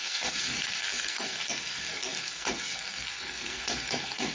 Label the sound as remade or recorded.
remade